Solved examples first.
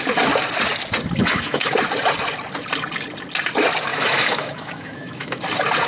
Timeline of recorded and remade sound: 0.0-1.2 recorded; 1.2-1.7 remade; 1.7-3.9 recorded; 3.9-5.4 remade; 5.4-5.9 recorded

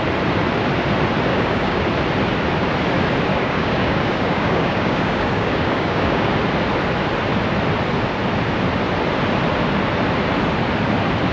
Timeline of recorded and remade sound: 0.0-1.3 recorded; 1.3-1.8 remade; 1.8-3.3 recorded; 3.3-6.3 remade; 6.3-11.3 recorded

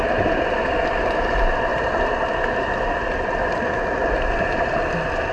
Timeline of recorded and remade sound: 0.0-4.0 recorded; 4.0-4.6 remade; 4.6-5.3 recorded

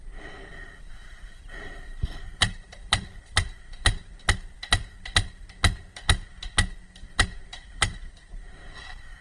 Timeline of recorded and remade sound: 0.0-1.0 recorded; 1.0-4.1 remade; 4.1-7.5 recorded; 7.5-8.1 remade; 8.1-9.2 recorded